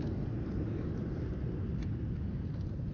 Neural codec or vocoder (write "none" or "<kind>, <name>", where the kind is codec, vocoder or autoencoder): none